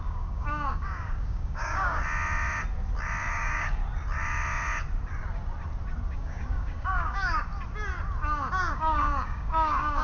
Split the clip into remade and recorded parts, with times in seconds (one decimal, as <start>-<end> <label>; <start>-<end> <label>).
0.0-2.0 remade; 2.0-3.3 recorded; 3.3-3.8 remade; 3.8-6.1 recorded; 6.1-7.5 remade; 7.5-8.7 recorded; 8.7-10.0 remade